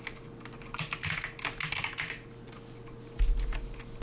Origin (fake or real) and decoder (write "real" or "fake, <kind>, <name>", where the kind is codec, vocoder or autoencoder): real